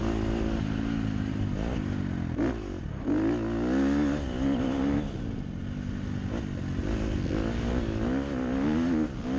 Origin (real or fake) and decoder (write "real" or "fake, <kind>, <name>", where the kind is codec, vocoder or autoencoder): real